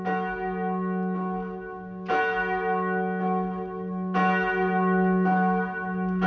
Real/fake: real